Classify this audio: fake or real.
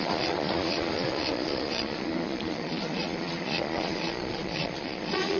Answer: fake